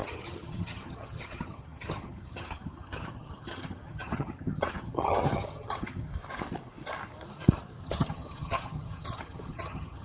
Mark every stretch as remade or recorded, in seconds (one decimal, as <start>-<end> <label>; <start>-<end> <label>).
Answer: 0.0-6.1 remade; 6.1-7.8 recorded; 7.8-10.0 remade